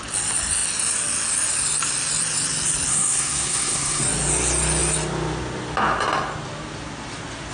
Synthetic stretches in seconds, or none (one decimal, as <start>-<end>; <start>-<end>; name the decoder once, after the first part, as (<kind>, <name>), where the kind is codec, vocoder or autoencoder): 2.9-4.0 (codec, SNAC)